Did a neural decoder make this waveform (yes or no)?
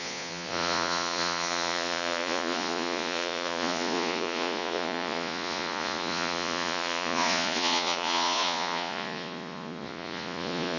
yes